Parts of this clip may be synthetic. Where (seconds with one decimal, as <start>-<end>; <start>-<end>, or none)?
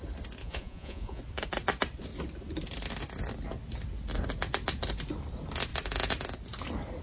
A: 0.4-1.2